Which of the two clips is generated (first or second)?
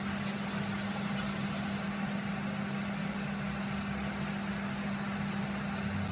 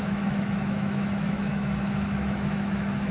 second